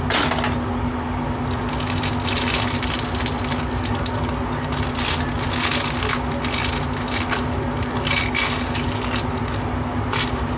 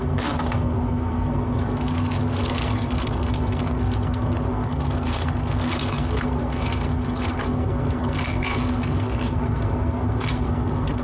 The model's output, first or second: second